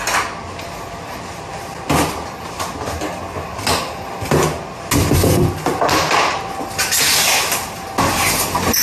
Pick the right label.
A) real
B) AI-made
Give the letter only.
A